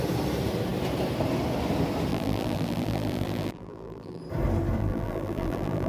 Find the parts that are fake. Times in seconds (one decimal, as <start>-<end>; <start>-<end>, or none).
2.1-4.2; 4.8-5.9